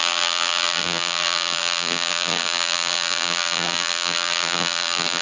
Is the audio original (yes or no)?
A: no